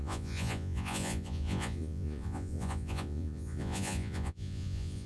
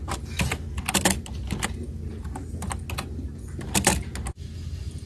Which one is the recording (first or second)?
second